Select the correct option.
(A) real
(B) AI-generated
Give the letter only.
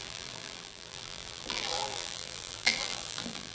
B